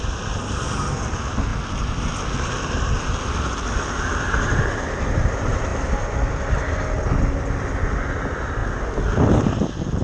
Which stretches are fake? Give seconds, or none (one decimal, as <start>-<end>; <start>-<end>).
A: none